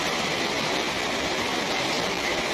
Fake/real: fake